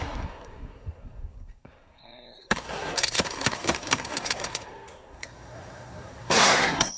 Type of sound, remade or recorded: remade